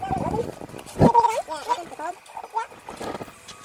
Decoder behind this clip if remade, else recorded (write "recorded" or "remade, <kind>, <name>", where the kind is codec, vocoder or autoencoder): recorded